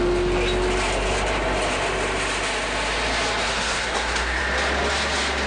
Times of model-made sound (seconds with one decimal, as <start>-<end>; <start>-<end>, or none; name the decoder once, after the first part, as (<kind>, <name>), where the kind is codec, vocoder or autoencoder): 3.4-4.4 (codec, SNAC)